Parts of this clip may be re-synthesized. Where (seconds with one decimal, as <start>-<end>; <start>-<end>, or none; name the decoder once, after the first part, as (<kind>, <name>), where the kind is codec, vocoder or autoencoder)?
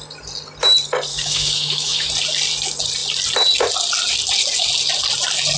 1.1-2.1 (autoencoder, DAC-VAE)